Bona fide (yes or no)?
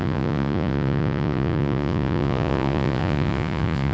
no